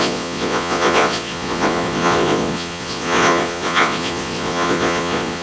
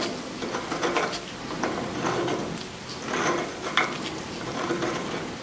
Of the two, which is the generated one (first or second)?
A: first